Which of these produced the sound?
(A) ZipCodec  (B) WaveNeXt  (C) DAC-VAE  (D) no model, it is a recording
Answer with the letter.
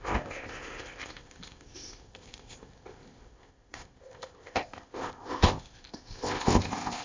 A